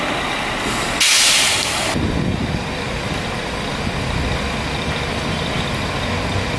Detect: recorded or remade recorded